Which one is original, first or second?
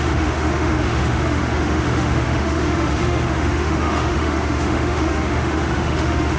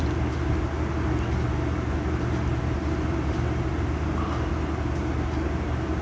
second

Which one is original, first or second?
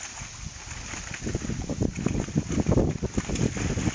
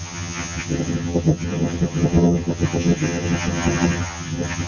first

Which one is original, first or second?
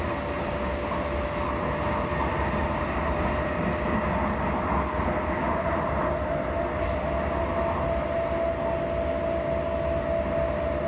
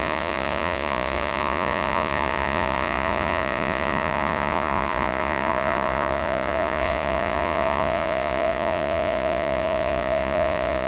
first